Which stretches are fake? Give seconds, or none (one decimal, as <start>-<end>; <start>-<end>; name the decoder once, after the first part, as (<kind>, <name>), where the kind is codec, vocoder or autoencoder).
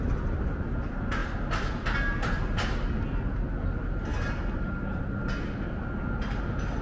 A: none